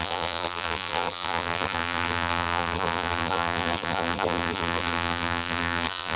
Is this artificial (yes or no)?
yes